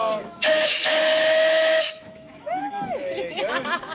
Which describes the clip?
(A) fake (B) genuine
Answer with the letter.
A